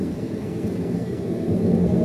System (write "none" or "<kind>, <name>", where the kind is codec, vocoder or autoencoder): codec, SNAC